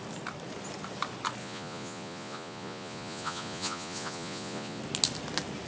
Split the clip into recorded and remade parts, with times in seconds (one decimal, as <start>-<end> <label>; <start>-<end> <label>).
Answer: 0.0-1.4 recorded; 1.4-4.8 remade; 4.8-5.7 recorded